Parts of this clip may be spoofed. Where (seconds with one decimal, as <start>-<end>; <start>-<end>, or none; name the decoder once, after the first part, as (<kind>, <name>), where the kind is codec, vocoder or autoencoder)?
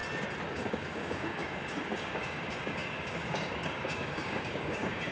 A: 0.5-5.1 (codec, DAC)